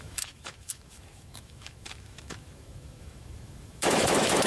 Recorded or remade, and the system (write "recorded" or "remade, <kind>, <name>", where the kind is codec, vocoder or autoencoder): remade, autoencoder, DAC-VAE